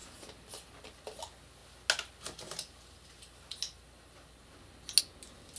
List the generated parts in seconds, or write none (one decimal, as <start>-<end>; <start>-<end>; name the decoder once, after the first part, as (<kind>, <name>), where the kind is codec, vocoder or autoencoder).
none